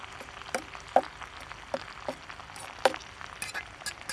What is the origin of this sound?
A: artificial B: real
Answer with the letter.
B